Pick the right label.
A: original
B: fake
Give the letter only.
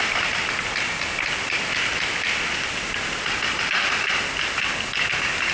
A